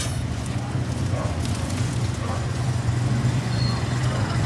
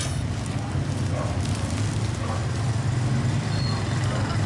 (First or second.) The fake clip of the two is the first